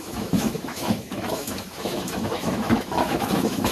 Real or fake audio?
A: fake